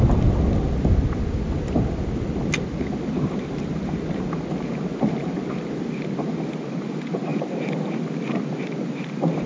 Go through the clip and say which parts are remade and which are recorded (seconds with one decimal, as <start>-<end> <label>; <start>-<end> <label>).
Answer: 0.0-9.5 recorded